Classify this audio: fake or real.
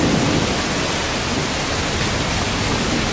real